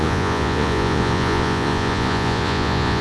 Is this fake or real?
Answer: fake